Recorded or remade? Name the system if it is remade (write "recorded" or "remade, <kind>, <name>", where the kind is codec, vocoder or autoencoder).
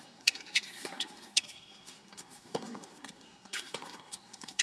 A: remade, codec, SNAC